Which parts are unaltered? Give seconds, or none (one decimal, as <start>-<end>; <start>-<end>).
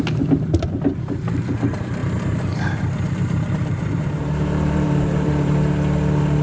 0.0-2.0; 5.5-6.4